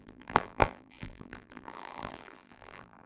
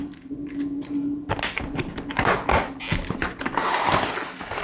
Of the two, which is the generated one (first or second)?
first